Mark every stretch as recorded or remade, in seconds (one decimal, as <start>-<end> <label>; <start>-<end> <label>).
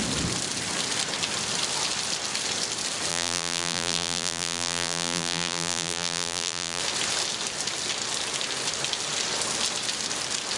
0.0-3.1 recorded; 3.1-6.8 remade; 6.8-10.6 recorded